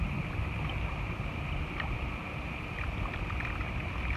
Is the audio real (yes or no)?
yes